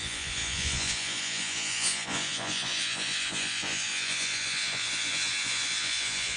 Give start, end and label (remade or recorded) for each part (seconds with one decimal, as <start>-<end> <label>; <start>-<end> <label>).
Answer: 0.0-6.4 remade

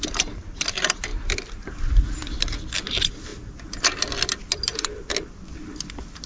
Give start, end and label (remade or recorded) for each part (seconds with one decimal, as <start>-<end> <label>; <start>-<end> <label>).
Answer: 0.0-6.3 recorded

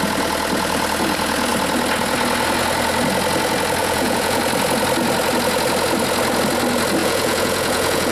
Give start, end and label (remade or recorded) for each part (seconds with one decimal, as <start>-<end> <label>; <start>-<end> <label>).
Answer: 0.0-3.8 recorded; 3.8-4.4 remade; 4.4-7.0 recorded; 7.0-8.1 remade

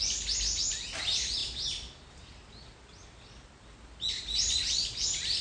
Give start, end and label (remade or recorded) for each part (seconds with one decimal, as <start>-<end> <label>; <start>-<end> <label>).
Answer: 0.0-5.4 recorded

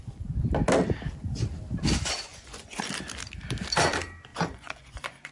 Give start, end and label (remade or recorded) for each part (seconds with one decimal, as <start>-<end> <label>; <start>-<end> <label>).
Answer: 0.0-2.3 recorded; 2.3-2.8 remade; 2.8-4.3 recorded; 4.3-5.3 remade

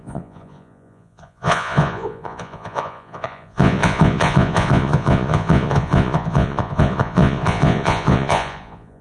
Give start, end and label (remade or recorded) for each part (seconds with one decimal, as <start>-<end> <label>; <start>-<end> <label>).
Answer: 0.0-9.0 remade

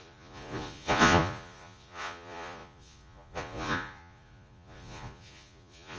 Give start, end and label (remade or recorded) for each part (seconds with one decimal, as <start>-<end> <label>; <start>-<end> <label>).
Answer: 0.0-6.0 remade